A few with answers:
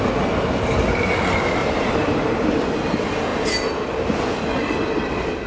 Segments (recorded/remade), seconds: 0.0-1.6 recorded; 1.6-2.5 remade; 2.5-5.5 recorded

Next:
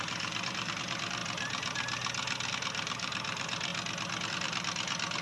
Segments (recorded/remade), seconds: 0.0-1.2 remade; 1.2-2.5 recorded; 2.5-3.7 remade; 3.7-4.3 recorded; 4.3-5.2 remade